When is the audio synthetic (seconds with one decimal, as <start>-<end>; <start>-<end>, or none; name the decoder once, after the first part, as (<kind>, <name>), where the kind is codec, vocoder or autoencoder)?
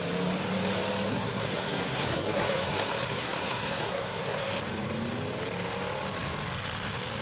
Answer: 1.1-4.5 (codec, SNAC)